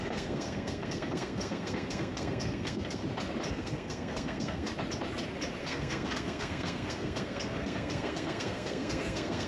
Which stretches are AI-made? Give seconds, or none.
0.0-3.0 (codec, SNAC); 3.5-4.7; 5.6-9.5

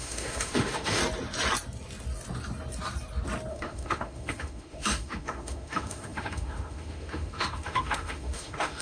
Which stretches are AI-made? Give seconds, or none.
0.0-1.0 (autoencoder, DAC-VAE); 3.5-8.8

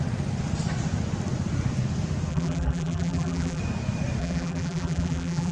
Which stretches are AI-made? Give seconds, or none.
2.3-3.6 (vocoder, BigVGAN v2); 4.2-5.5